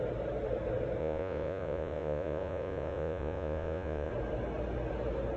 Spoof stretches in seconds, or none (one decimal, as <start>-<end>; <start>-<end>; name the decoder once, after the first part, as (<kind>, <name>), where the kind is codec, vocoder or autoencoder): 1.0-4.1 (vocoder, Vocos)